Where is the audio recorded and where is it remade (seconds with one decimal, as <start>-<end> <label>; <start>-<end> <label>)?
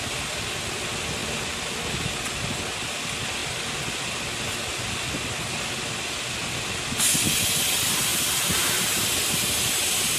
0.0-8.1 recorded; 8.1-10.2 remade